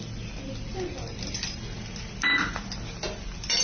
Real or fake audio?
real